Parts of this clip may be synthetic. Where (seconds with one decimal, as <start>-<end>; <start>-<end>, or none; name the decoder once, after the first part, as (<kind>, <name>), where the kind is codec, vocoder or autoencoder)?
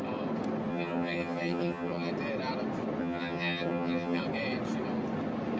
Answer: 0.7-2.1 (vocoder, HiFi-GAN); 3.0-4.2